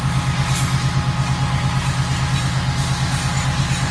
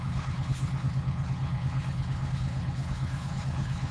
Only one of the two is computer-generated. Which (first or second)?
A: second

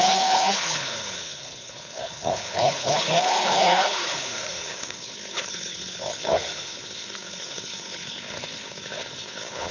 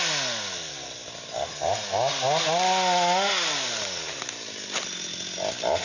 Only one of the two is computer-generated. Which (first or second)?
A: first